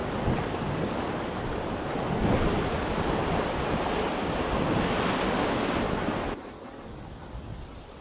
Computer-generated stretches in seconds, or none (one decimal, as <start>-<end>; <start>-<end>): none